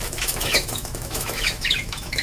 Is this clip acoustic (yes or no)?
no